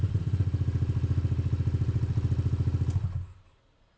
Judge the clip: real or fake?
real